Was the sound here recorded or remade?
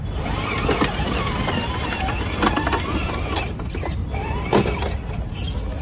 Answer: recorded